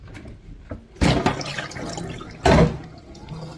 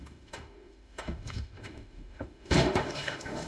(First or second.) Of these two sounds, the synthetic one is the second